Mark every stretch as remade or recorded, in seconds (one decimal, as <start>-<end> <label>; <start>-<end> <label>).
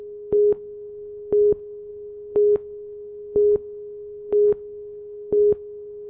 0.0-6.1 remade